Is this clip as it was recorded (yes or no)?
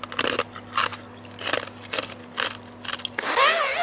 yes